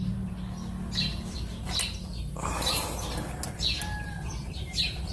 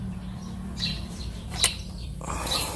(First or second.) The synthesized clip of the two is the second